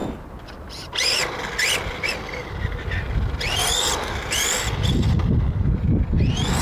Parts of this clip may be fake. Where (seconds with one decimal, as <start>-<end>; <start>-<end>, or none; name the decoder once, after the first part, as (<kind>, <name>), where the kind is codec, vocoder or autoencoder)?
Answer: none